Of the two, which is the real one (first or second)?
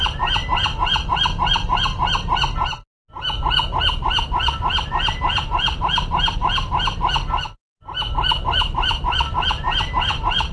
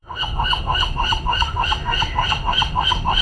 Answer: first